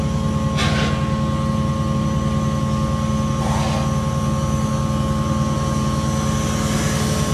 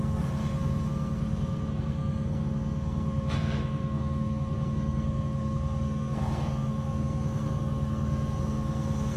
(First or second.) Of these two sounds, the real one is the first